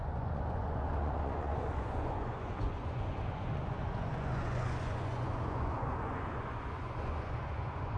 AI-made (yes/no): yes